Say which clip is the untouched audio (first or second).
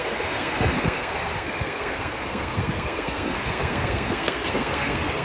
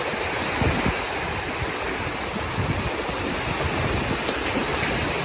second